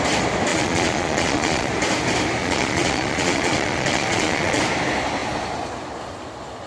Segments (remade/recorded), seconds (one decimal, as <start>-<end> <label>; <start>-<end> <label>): 0.0-0.5 recorded; 0.5-1.7 remade; 1.7-2.4 recorded; 2.4-4.6 remade; 4.6-6.7 recorded